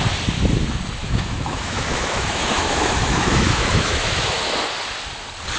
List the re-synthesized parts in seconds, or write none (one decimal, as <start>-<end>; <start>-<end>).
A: 1.0-4.4